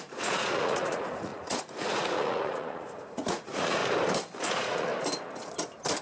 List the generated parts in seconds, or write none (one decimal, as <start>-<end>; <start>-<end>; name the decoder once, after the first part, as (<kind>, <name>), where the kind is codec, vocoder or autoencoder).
0.0-3.8 (vocoder, Vocos); 4.5-4.9